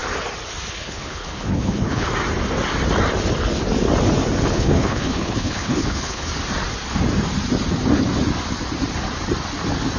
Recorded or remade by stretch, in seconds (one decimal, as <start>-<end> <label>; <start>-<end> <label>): 0.0-0.7 recorded; 0.7-2.1 remade; 2.1-4.5 recorded; 4.5-6.3 remade; 6.3-10.0 recorded

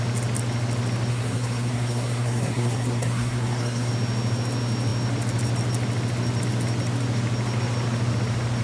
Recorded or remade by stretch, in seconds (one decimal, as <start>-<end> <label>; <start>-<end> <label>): 0.0-1.1 recorded; 1.1-3.9 remade; 3.9-8.6 recorded